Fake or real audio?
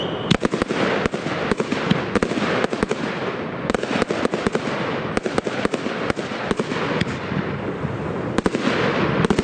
real